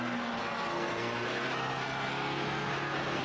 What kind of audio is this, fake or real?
fake